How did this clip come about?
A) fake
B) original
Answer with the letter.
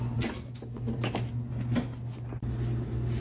B